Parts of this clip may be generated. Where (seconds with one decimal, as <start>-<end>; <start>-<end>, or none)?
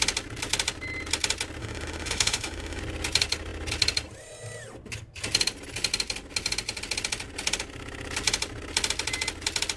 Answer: 1.6-2.8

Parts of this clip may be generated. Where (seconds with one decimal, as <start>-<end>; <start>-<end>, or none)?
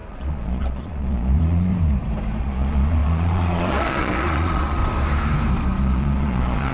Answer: 0.0-1.7; 2.4-4.8; 5.8-6.7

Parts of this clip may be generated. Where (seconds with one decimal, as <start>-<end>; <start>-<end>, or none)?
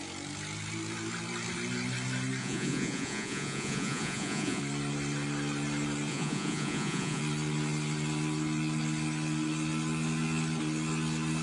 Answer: 2.4-4.6; 6.1-7.2